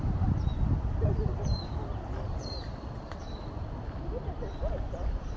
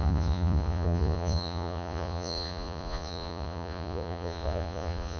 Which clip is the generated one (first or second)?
second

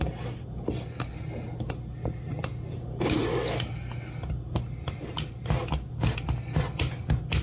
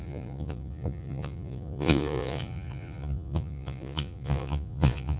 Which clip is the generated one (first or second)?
second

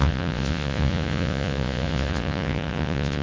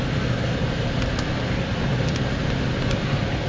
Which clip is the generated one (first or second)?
first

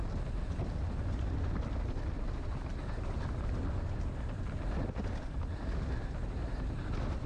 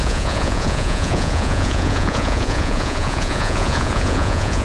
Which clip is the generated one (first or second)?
second